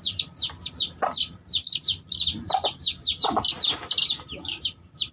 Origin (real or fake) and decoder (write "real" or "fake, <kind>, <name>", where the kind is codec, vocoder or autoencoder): fake, vocoder, BigVGAN v2